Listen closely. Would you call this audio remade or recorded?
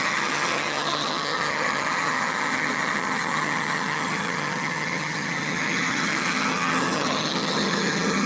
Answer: remade